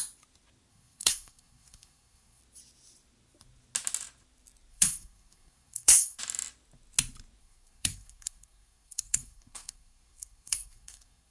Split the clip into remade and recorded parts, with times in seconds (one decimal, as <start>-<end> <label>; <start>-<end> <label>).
0.0-0.7 recorded; 0.7-2.4 remade; 2.4-4.7 recorded; 4.7-6.2 remade; 6.2-7.4 recorded; 7.4-11.3 remade

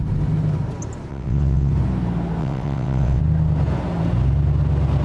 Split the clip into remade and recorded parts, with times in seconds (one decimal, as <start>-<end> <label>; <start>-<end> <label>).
0.0-1.1 recorded; 1.1-1.7 remade; 1.7-2.4 recorded; 2.4-3.2 remade; 3.2-5.0 recorded

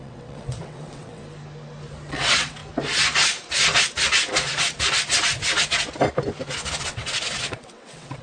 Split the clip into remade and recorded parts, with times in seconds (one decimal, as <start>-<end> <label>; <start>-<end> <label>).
0.0-1.2 remade; 1.2-2.1 recorded; 2.1-2.6 remade; 2.6-6.8 recorded; 6.8-8.2 remade